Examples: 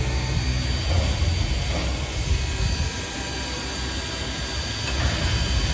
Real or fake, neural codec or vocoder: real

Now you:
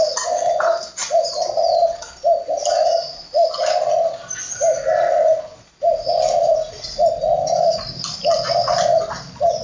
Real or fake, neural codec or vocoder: real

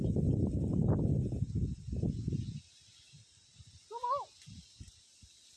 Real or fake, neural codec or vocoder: real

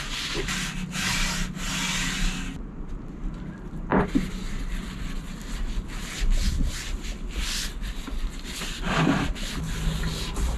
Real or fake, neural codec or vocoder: real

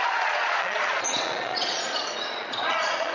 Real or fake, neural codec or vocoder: fake, vocoder, Vocos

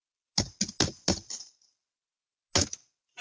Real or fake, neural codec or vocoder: real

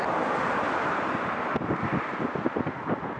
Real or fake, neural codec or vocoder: real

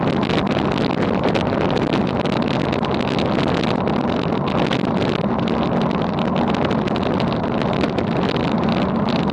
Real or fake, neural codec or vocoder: real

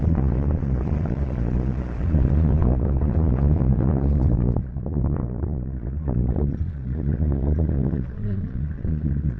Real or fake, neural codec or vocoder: fake, vocoder, Vocos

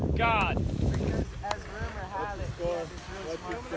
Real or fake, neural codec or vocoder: real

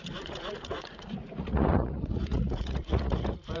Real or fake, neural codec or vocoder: fake, vocoder, Vocos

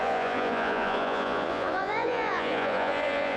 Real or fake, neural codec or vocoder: fake, vocoder, Vocos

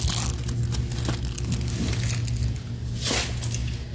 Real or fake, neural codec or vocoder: real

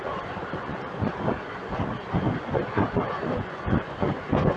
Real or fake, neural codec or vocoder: fake, vocoder, Vocos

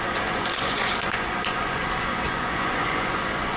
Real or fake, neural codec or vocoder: fake, vocoder, Vocos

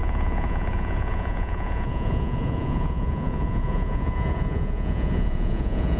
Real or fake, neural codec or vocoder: fake, vocoder, Vocos